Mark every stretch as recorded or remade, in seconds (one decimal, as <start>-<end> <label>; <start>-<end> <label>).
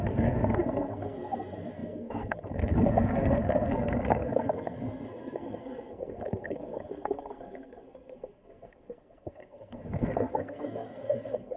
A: 0.0-11.6 remade